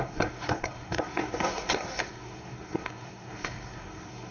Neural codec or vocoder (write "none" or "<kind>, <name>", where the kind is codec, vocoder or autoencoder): codec, SNAC